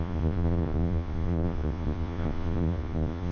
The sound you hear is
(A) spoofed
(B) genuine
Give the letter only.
A